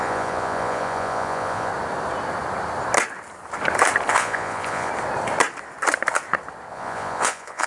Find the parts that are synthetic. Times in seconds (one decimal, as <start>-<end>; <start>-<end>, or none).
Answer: 0.0-1.7; 4.1-4.9; 6.7-7.7

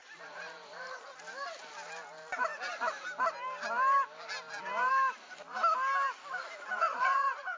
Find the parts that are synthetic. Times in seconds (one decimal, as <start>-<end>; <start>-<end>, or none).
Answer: 0.0-1.0; 6.8-7.6

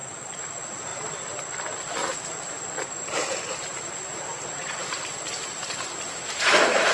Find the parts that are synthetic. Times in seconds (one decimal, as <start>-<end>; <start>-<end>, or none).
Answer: none

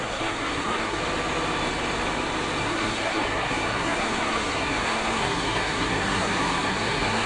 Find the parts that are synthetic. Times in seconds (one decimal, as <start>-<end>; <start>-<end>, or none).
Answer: 0.0-1.0; 2.6-7.3

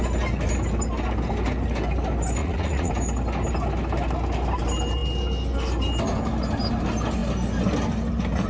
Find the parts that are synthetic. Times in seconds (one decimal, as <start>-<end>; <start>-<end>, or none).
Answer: 2.4-2.9

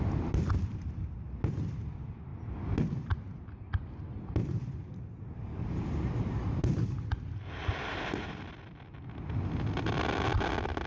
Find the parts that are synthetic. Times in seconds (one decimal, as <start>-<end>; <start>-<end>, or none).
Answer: none

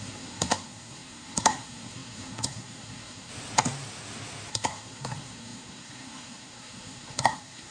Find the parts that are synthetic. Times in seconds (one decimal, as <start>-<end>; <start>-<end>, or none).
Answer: 0.0-3.3; 4.5-7.7

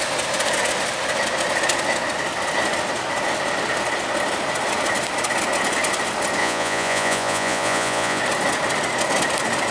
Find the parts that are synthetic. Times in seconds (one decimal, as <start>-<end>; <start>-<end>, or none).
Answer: 6.4-8.2